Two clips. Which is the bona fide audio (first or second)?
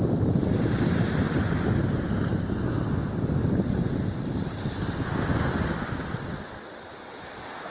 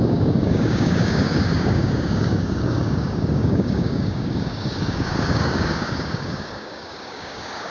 first